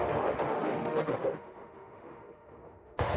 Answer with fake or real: fake